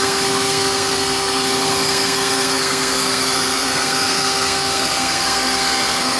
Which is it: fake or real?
fake